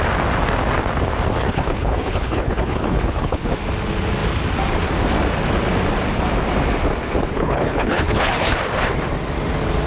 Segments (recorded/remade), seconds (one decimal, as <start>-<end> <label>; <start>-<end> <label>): 0.0-1.4 recorded; 1.4-3.5 remade; 3.5-7.3 recorded; 7.3-8.5 remade; 8.5-9.9 recorded